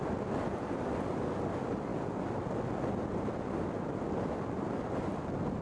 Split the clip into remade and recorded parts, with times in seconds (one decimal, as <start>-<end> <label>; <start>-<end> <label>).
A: 0.0-5.6 recorded

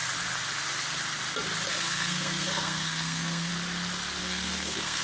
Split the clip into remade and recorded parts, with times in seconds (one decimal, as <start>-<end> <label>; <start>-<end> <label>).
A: 0.0-1.7 recorded; 1.7-3.5 remade; 3.5-4.2 recorded; 4.2-5.0 remade

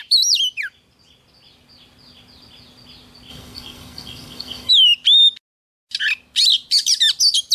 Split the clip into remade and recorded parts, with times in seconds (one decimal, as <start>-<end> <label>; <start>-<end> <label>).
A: 0.0-3.3 recorded; 3.3-4.7 remade; 4.7-7.5 recorded

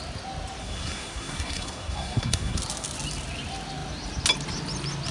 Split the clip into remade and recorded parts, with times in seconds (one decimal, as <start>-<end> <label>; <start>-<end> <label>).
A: 0.0-0.6 recorded; 0.6-2.6 remade; 2.6-5.1 recorded